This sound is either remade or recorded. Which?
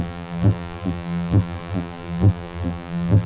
remade